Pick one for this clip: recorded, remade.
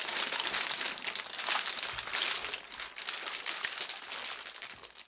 recorded